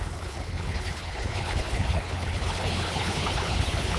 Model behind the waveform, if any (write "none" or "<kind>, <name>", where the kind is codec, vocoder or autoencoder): codec, HILCodec